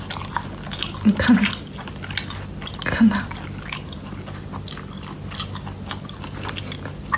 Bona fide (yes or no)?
yes